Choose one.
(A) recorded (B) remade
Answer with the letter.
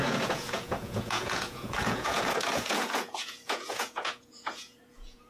B